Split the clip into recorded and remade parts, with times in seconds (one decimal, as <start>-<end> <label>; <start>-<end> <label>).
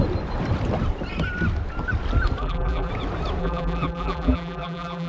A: 0.0-2.4 recorded; 2.4-2.9 remade; 2.9-3.4 recorded; 3.4-5.1 remade